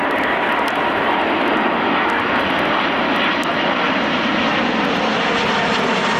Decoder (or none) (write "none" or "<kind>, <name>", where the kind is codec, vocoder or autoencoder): none